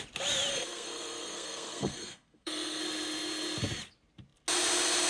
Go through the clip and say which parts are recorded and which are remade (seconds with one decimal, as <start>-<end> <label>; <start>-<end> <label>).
0.0-0.5 recorded; 0.5-2.8 remade; 2.8-5.1 recorded